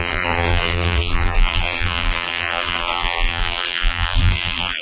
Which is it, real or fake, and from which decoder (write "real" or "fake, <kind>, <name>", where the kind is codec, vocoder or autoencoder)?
fake, vocoder, BigVGAN v2